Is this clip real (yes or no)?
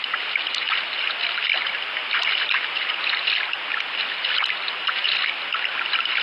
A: yes